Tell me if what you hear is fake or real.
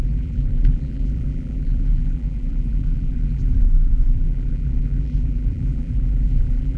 fake